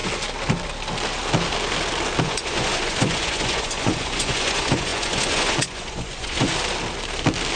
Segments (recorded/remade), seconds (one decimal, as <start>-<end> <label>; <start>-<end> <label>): 0.0-2.2 recorded; 2.2-6.5 remade; 6.5-7.6 recorded